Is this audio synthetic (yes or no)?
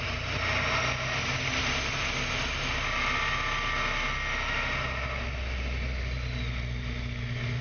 no